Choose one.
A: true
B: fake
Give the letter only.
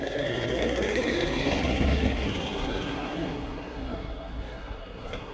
B